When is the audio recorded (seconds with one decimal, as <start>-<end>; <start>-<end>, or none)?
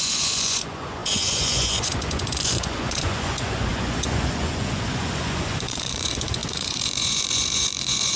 none